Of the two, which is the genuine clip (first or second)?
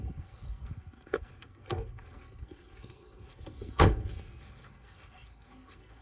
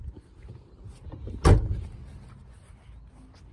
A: second